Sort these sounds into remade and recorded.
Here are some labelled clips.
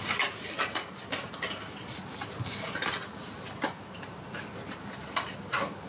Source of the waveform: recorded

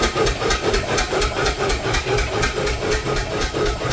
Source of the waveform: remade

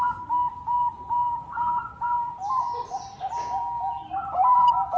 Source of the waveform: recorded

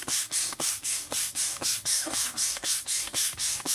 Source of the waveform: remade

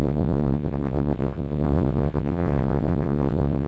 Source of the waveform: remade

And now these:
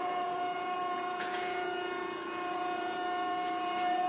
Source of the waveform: remade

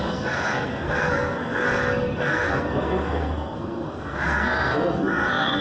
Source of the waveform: remade